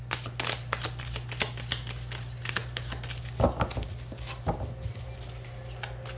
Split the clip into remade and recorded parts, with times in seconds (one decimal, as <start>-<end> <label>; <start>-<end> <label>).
0.0-6.2 recorded